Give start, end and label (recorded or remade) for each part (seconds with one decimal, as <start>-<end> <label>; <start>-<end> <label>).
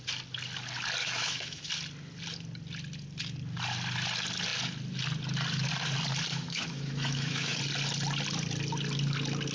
0.0-1.0 recorded; 1.0-1.7 remade; 1.7-6.3 recorded; 6.3-7.6 remade; 7.6-9.5 recorded